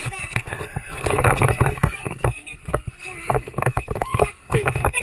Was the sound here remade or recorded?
remade